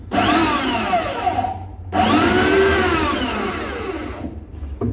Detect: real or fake fake